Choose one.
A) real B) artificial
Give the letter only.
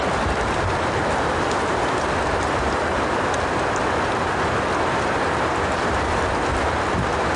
A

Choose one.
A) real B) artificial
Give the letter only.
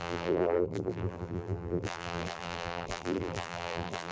B